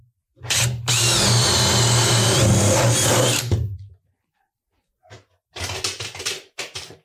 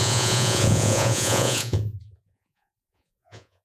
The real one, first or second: first